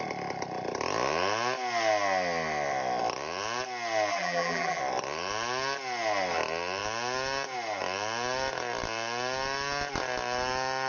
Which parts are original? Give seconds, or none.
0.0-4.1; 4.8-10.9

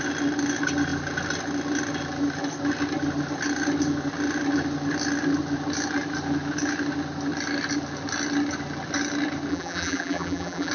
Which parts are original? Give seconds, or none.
0.0-9.5